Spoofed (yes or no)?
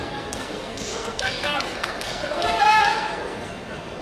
yes